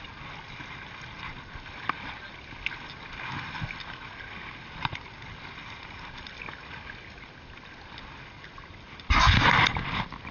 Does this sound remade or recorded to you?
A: recorded